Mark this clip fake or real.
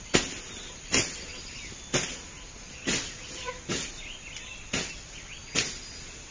real